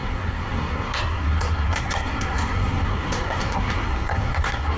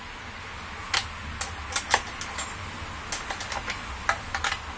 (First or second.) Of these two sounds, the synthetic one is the first